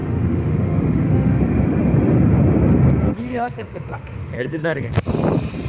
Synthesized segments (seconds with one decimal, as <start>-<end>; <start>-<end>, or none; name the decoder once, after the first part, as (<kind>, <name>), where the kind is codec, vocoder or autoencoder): 0.0-1.4 (autoencoder, DAC-VAE); 3.2-4.9